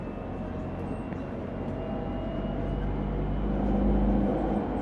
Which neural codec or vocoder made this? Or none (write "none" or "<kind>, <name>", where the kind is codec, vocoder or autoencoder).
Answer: none